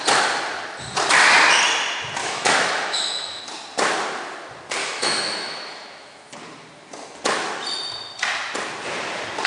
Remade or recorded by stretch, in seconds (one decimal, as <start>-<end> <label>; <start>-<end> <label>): 0.0-2.2 recorded; 2.2-3.4 remade; 3.4-4.8 recorded; 4.8-6.3 remade; 6.3-9.5 recorded